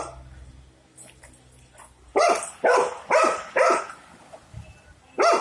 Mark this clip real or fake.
real